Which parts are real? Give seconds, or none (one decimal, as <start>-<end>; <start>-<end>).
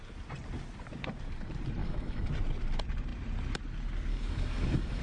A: 0.0-1.8; 2.3-4.1